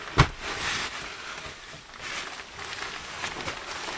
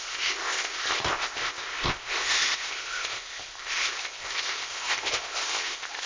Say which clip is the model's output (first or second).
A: second